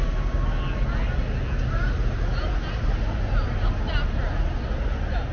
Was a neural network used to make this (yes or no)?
no